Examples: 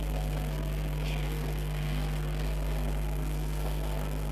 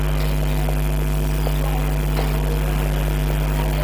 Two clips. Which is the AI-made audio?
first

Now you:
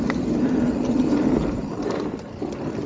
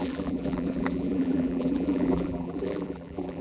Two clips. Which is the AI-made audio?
second